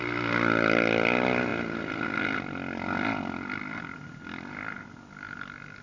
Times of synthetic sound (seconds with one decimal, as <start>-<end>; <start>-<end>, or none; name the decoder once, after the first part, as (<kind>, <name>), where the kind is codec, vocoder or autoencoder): none